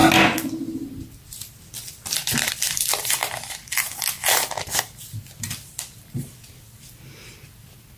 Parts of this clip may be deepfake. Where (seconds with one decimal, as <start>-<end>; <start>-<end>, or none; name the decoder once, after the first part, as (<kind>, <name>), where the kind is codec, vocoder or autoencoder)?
2.5-8.0 (vocoder, BigVGAN v2)